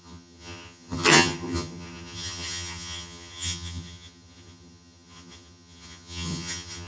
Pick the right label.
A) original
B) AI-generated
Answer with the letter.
B